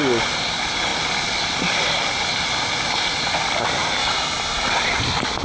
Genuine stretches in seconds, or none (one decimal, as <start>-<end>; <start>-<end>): 0.0-4.0; 4.7-5.4